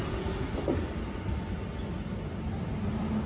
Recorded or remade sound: recorded